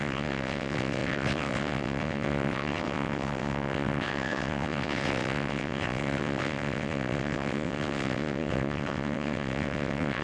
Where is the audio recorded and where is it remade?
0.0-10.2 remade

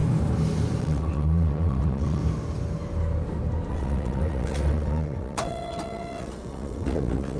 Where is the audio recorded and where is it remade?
0.0-0.8 recorded; 0.8-2.2 remade; 2.2-3.7 recorded; 3.7-7.4 remade

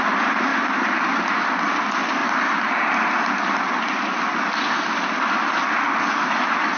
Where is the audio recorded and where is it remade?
0.0-6.8 recorded

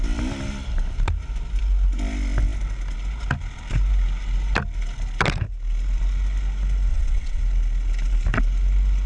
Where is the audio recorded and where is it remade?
0.0-6.9 recorded; 6.9-7.4 remade; 7.4-9.1 recorded

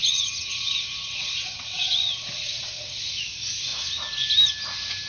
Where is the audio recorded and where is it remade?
0.0-3.1 remade; 3.1-5.1 recorded

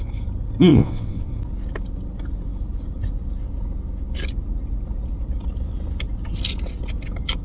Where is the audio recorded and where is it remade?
0.0-0.7 recorded; 0.7-1.3 remade; 1.3-7.4 recorded

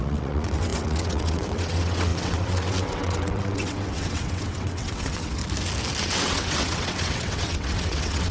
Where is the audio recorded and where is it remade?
0.0-5.4 remade; 5.4-6.0 recorded; 6.0-8.3 remade